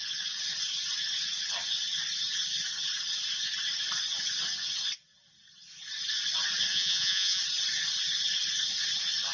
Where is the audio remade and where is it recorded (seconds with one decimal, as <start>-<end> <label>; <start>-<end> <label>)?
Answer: 0.0-6.7 recorded; 6.7-7.4 remade; 7.4-9.3 recorded